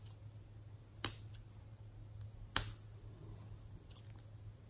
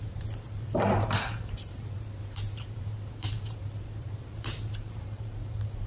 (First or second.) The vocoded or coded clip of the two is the second